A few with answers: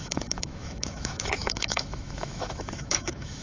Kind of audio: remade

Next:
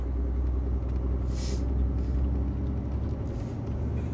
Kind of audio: recorded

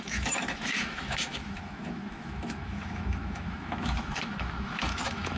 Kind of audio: remade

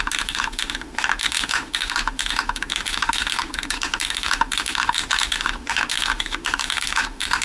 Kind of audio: remade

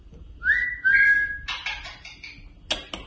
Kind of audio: recorded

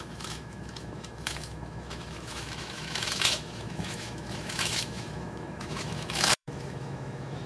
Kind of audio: remade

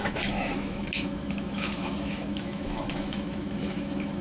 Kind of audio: remade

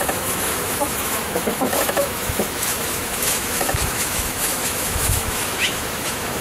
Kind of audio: remade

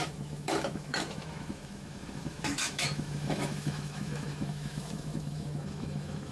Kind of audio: remade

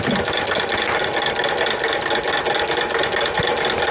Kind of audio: recorded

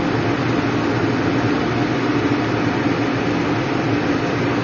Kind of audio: recorded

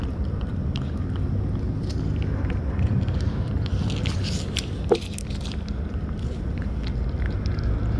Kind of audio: recorded